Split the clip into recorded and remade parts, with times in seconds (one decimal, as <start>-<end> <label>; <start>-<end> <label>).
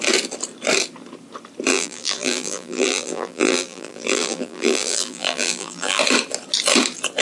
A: 0.0-1.7 recorded; 1.7-6.0 remade; 6.0-7.2 recorded